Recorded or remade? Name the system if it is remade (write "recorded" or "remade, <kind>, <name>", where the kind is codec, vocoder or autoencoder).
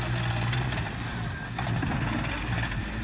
recorded